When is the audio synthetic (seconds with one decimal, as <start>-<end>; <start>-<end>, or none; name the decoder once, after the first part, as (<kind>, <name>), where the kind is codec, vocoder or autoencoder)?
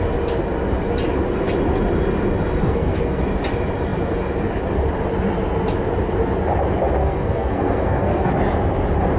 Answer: 2.6-3.2 (codec, SNAC); 7.0-8.3